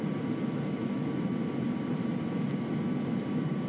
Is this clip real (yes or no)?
yes